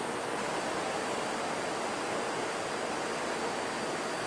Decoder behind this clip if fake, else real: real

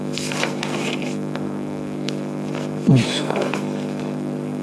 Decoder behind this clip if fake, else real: fake, codec, SNAC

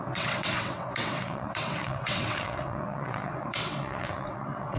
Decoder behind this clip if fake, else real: fake, vocoder, WaveNeXt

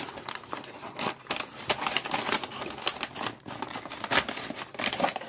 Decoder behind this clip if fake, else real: real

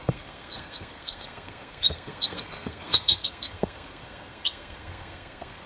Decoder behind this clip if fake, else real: fake, codec, SNAC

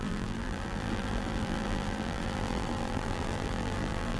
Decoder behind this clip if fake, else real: fake, vocoder, BigVGAN v2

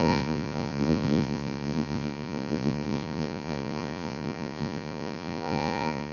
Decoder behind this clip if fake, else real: fake, vocoder, Vocos